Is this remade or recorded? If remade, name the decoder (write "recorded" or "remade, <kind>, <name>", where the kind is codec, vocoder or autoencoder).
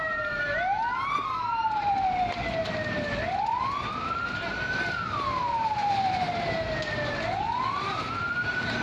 recorded